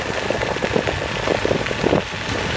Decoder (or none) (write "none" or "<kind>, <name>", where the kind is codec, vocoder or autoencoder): none